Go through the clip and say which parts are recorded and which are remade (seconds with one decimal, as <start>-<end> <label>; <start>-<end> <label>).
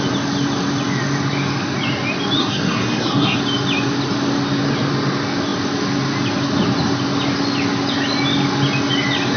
0.0-2.4 recorded; 2.4-3.4 remade; 3.4-9.4 recorded